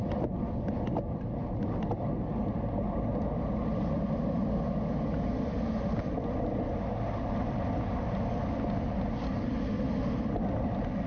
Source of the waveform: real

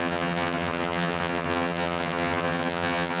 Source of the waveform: fake